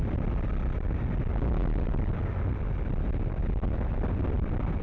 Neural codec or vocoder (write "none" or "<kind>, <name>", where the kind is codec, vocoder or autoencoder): none